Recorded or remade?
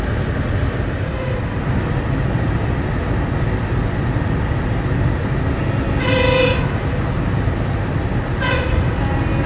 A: recorded